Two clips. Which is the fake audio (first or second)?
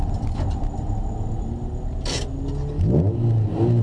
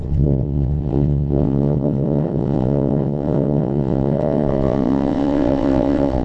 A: second